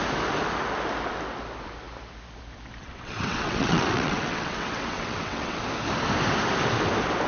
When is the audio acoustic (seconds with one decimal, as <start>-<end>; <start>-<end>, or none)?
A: 0.0-2.8; 5.6-7.3